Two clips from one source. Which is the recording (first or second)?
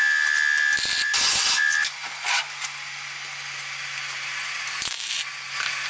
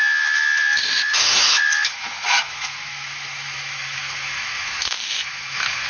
first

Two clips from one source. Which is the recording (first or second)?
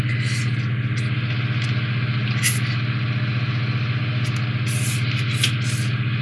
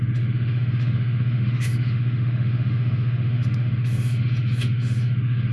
first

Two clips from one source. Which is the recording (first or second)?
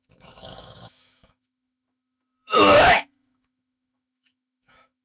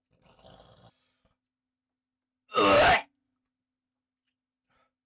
second